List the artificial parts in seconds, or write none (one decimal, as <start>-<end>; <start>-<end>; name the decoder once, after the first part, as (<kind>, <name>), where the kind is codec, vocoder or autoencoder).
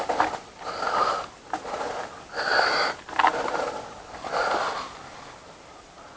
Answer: none